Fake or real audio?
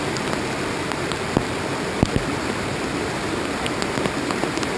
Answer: real